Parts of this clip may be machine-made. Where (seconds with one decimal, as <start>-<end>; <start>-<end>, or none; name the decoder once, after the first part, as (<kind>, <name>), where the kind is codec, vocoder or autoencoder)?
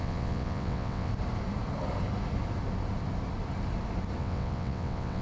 0.0-1.1 (vocoder, WaveNeXt); 4.2-5.2